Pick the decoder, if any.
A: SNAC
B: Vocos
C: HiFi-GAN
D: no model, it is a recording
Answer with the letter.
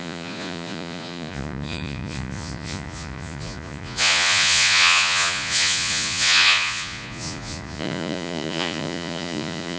B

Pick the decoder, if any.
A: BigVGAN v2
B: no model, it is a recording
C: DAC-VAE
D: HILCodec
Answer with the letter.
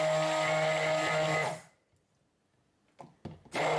B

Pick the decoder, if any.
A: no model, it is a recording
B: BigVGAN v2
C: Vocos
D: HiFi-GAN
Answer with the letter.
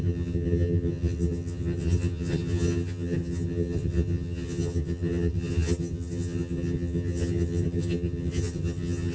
D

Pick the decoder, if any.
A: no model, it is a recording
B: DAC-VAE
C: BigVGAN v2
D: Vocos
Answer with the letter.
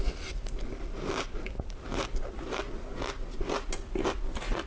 A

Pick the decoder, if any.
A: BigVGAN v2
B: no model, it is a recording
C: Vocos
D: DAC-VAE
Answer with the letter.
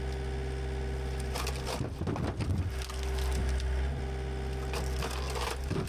B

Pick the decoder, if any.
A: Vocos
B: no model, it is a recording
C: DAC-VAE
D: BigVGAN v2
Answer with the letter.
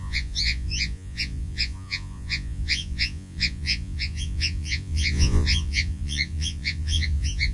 A